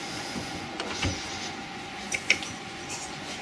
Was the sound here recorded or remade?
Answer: remade